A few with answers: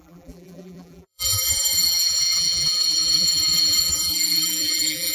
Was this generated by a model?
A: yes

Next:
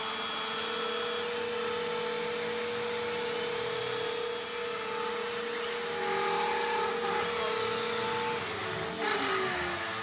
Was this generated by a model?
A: no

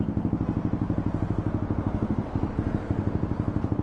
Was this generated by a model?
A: no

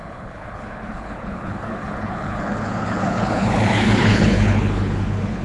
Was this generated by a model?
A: yes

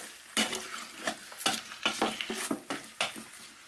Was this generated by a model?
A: no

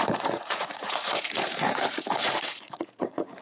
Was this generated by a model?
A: yes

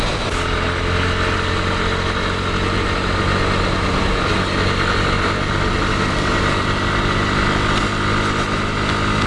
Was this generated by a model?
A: no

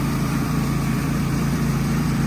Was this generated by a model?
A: yes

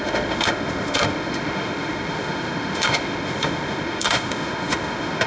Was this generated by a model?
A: yes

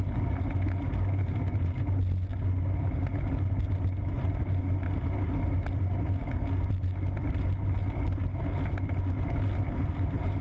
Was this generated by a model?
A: no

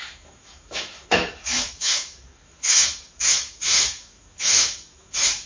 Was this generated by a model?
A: yes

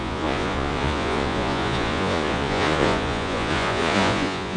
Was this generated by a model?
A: yes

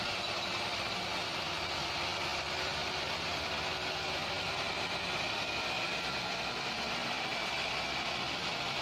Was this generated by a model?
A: no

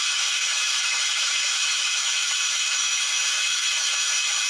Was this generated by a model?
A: yes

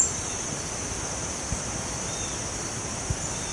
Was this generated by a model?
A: no